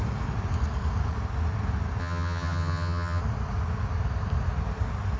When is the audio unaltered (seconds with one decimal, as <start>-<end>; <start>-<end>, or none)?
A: 0.0-2.0; 3.2-5.2